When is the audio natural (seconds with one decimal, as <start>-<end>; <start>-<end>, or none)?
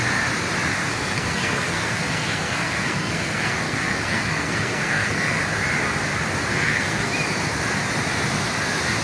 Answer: 0.0-0.8; 5.4-6.5; 7.1-9.0